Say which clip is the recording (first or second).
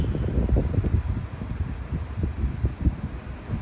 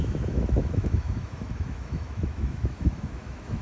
first